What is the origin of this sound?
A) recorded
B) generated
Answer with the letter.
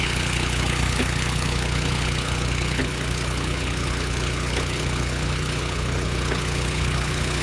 B